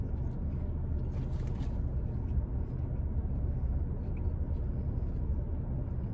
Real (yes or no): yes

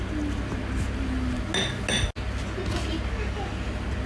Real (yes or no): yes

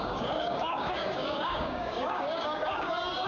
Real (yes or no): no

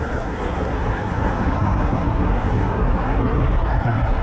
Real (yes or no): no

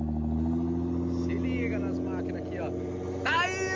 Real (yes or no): yes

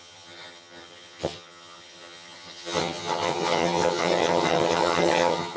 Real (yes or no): no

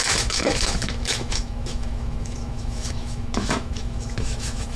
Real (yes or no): no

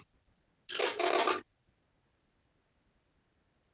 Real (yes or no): yes